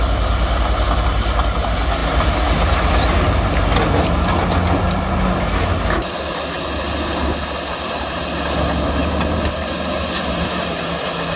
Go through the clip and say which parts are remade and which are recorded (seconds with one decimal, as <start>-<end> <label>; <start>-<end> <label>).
0.0-9.0 recorded; 9.0-10.8 remade; 10.8-11.4 recorded